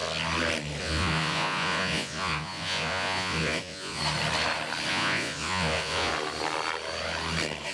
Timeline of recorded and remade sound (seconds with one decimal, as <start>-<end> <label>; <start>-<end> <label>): 0.0-0.8 recorded; 0.8-4.0 remade; 4.0-4.9 recorded; 4.9-6.1 remade; 6.1-7.7 recorded